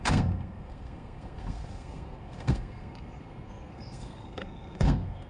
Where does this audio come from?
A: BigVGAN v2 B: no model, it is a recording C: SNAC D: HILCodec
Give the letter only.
C